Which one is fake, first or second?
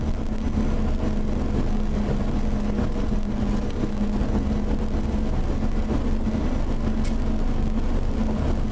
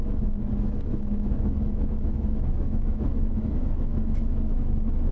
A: second